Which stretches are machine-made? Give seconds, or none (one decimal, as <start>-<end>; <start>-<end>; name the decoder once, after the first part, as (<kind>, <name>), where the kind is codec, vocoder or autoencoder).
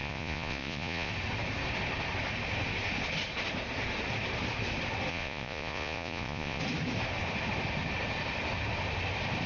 0.0-1.1 (vocoder, Vocos); 5.1-6.6